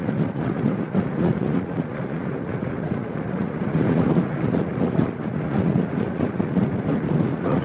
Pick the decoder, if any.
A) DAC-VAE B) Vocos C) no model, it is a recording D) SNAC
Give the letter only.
B